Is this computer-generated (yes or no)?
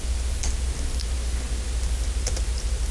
no